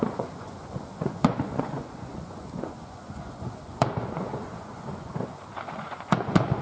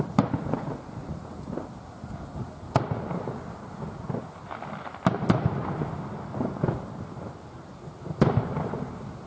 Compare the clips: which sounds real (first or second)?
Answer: second